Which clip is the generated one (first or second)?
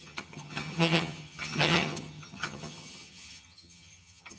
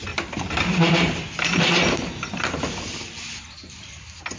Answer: first